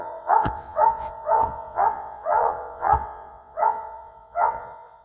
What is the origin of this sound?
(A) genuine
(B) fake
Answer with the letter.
B